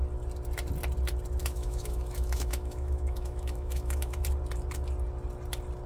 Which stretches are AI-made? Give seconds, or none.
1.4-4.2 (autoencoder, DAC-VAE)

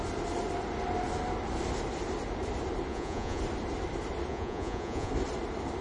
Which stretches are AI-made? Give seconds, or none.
2.9-3.4 (vocoder, Vocos); 4.3-5.1

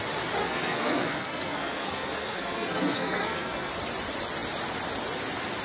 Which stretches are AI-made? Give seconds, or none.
0.4-3.7 (codec, SNAC)

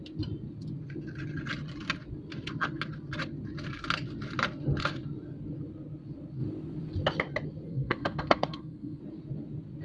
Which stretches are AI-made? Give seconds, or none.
7.7-9.0 (codec, SNAC)

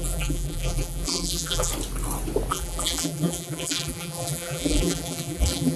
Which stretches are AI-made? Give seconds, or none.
0.0-1.7 (vocoder, BigVGAN v2); 2.5-5.8